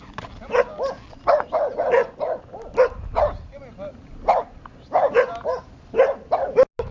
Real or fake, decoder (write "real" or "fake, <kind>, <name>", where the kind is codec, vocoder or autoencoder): real